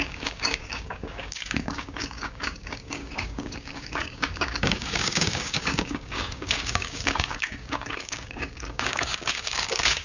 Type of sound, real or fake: fake